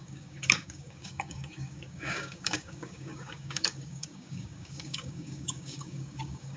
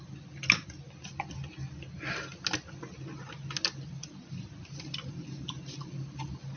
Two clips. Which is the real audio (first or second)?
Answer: second